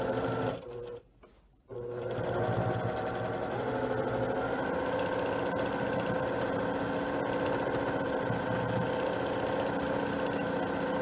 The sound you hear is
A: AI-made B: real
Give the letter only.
B